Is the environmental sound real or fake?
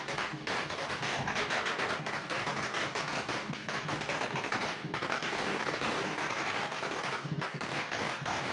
fake